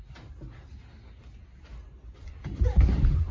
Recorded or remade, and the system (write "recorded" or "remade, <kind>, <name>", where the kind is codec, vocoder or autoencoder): recorded